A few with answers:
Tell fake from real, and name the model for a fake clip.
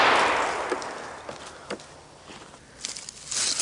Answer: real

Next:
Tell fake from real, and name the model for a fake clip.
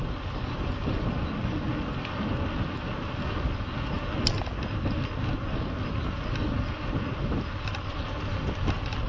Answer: real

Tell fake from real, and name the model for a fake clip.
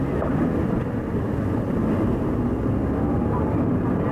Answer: real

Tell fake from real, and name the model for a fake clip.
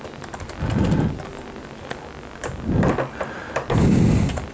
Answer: real